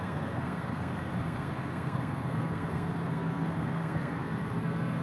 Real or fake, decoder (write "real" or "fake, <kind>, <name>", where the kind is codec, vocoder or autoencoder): fake, codec, SNAC